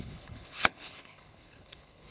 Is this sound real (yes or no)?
no